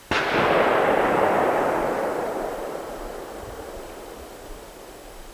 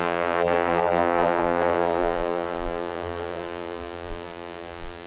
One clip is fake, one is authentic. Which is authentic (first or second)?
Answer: first